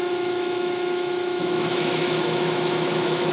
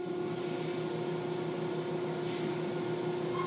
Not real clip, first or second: first